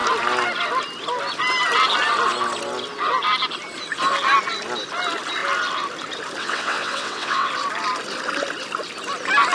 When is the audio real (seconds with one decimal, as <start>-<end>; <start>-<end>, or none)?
0.0-6.4; 7.5-9.5